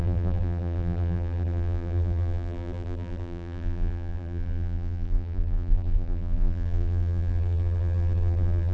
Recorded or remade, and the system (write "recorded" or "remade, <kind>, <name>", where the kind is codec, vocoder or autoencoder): remade, vocoder, BigVGAN v2